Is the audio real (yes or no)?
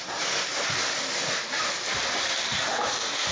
yes